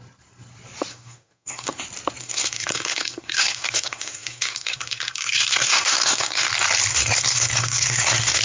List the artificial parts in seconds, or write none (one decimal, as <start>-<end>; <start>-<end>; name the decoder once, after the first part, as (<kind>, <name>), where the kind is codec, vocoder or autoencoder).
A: 0.9-1.8 (codec, SNAC); 2.2-6.5; 6.9-8.4